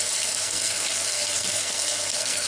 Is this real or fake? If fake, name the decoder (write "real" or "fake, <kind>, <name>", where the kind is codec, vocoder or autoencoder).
fake, codec, SNAC